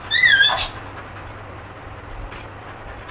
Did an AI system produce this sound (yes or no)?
no